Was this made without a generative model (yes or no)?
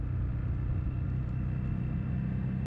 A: yes